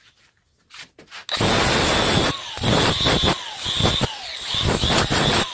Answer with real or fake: real